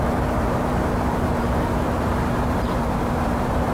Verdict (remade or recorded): remade